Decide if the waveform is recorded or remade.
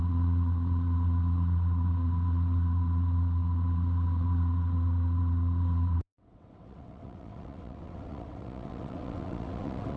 remade